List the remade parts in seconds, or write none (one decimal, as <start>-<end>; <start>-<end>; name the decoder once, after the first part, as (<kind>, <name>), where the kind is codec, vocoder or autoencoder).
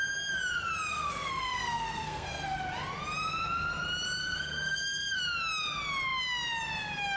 0.9-2.6 (codec, SNAC); 4.2-5.2